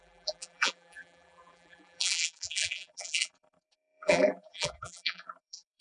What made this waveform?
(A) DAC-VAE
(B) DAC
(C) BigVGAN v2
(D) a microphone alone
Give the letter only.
C